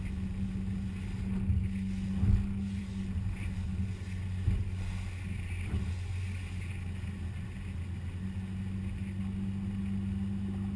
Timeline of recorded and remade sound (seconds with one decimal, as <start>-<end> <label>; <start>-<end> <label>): 0.0-10.8 recorded